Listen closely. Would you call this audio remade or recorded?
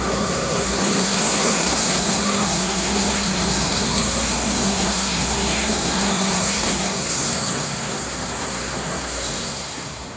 remade